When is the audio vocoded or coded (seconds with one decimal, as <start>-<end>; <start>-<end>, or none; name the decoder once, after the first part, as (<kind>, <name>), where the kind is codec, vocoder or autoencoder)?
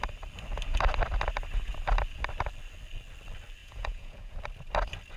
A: 3.6-4.4 (vocoder, Vocos)